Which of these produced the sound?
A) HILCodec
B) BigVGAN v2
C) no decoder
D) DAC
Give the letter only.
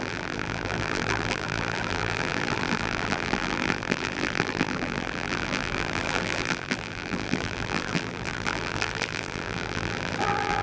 B